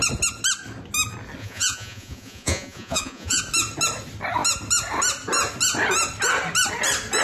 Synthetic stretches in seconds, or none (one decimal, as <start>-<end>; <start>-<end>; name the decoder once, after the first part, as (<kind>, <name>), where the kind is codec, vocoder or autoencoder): 1.4-3.4 (vocoder, Vocos)